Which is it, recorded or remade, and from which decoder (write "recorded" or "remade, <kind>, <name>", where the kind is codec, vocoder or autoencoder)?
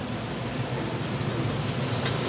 remade, vocoder, BigVGAN v2